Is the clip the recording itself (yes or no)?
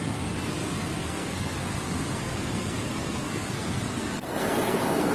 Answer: no